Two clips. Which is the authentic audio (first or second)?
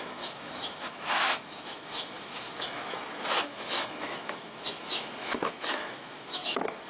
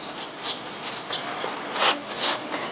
second